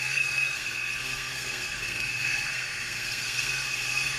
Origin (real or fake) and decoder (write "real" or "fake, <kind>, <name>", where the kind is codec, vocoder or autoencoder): fake, codec, SNAC